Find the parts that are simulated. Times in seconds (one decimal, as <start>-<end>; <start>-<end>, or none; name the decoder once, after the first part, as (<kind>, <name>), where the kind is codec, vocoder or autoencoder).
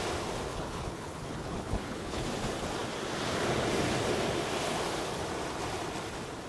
0.5-2.2 (codec, HILCodec)